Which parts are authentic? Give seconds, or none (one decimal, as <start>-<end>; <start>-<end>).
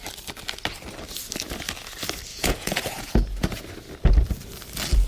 0.0-2.3; 3.6-5.1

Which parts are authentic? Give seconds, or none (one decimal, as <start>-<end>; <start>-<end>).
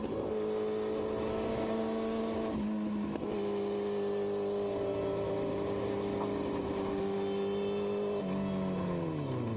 0.0-1.5; 2.2-9.6